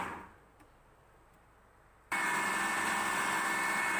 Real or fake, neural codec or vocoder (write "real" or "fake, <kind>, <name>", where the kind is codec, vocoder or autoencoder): real